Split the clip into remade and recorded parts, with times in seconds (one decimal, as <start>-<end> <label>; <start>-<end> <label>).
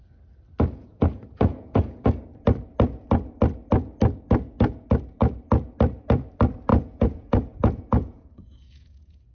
0.0-0.8 recorded; 0.8-2.1 remade; 2.1-6.7 recorded; 6.7-9.3 remade